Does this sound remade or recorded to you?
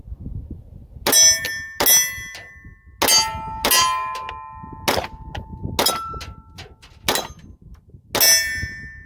recorded